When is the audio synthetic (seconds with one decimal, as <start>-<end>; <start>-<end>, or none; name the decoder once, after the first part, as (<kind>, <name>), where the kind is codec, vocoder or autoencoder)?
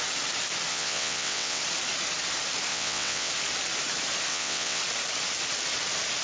0.7-1.6 (vocoder, WaveNeXt); 2.7-3.3; 4.3-4.8